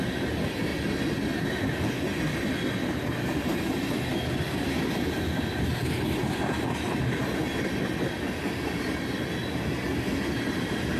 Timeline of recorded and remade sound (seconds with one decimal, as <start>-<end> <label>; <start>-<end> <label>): 0.0-11.0 recorded